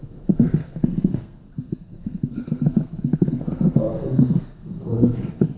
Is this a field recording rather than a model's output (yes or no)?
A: no